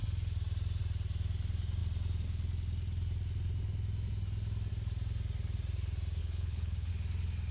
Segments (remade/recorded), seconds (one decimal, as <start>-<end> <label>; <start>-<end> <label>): 0.0-6.2 recorded; 6.2-6.9 remade; 6.9-7.5 recorded